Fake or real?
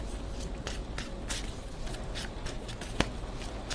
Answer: real